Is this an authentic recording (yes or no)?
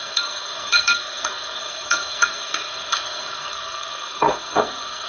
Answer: no